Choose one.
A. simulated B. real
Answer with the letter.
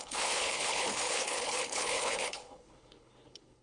A